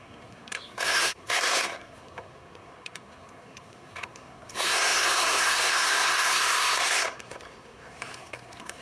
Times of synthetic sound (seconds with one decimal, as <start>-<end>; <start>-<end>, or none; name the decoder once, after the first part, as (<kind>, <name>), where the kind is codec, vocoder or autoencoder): 0.0-8.8 (codec, SNAC)

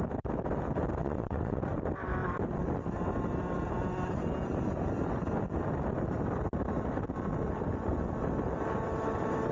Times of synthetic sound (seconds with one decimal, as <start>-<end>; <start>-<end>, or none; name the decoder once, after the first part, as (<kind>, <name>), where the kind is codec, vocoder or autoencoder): 1.0-1.6 (vocoder, WaveNeXt)

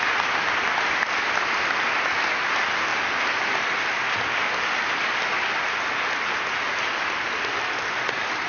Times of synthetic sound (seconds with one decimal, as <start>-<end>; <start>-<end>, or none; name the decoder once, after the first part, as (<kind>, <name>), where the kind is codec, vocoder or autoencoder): none

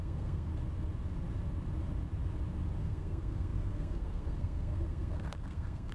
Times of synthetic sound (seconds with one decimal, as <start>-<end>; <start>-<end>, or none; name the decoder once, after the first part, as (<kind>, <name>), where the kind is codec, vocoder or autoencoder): 0.0-0.5 (codec, SNAC); 2.8-5.9

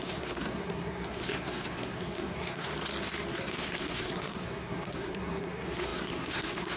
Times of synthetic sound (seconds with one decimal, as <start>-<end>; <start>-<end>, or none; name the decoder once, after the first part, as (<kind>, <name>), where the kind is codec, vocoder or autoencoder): 0.0-2.7 (codec, SNAC); 3.3-6.8

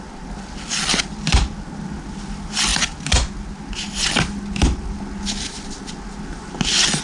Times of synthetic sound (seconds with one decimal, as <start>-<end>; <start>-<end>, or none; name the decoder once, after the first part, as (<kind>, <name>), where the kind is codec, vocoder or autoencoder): none

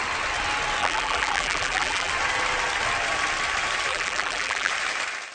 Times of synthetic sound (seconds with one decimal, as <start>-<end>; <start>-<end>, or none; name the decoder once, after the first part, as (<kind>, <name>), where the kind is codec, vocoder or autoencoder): 0.8-2.1 (vocoder, BigVGAN v2); 3.9-4.7

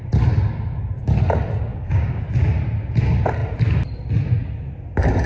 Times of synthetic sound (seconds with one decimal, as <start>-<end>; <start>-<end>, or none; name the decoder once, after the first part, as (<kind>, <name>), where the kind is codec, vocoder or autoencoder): 1.7-2.2 (codec, DAC)